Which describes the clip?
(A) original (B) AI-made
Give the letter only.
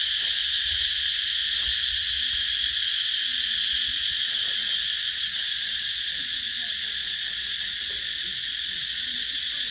B